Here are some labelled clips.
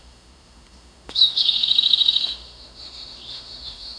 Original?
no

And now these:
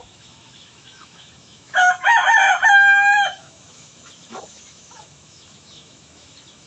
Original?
no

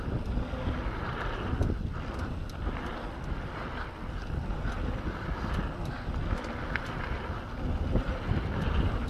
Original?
yes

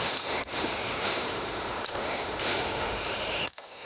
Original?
no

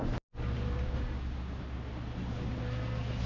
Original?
yes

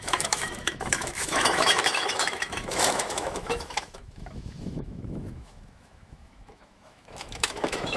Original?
no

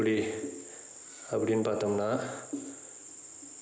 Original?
yes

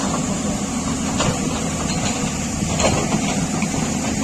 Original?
yes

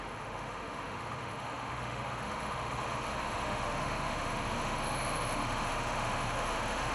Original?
no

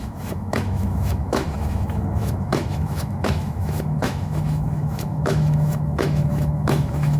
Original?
no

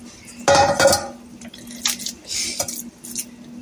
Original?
yes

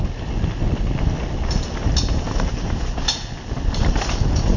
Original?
yes